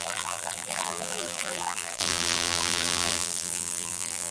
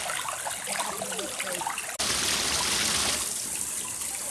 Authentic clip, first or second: second